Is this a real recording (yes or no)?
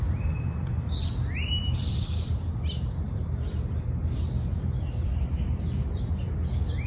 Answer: no